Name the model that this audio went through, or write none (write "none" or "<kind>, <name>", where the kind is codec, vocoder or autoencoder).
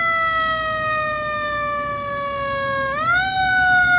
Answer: none